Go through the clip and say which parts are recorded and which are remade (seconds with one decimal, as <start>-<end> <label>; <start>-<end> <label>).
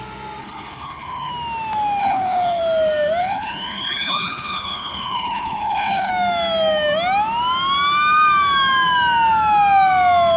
0.0-0.4 recorded; 0.4-1.3 remade; 1.3-2.0 recorded; 2.0-2.6 remade; 2.6-3.2 recorded; 3.2-6.1 remade; 6.1-10.4 recorded